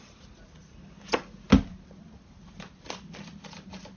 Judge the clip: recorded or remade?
recorded